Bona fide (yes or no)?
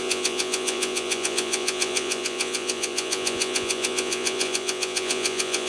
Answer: no